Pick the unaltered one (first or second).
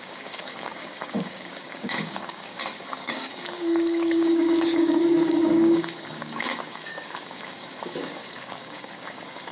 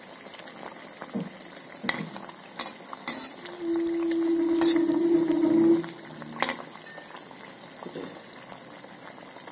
second